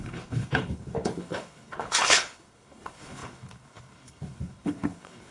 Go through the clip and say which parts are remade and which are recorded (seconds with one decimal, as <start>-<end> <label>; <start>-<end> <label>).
0.0-5.3 remade

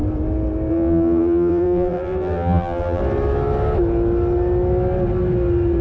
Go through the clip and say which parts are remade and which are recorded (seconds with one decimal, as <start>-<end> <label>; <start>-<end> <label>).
0.0-0.7 recorded; 0.7-3.0 remade; 3.0-5.8 recorded

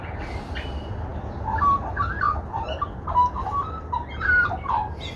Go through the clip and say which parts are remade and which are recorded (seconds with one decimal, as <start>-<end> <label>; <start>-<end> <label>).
0.0-5.2 recorded

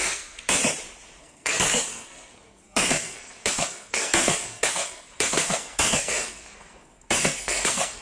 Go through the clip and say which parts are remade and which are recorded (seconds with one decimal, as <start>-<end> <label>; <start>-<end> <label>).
0.0-0.6 remade; 0.6-1.2 recorded; 1.2-8.0 remade

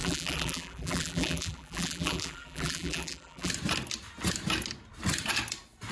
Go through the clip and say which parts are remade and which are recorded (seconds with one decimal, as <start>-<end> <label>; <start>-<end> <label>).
0.0-3.5 remade; 3.5-5.9 recorded

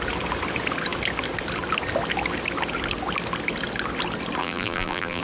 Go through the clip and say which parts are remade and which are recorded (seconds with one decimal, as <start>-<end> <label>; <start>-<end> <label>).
0.0-4.4 recorded; 4.4-5.2 remade

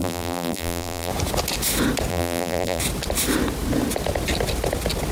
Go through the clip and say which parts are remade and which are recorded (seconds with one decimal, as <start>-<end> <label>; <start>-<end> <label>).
0.0-1.1 remade; 1.1-2.1 recorded; 2.1-2.8 remade; 2.8-5.1 recorded